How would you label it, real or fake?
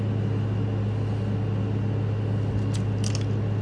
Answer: real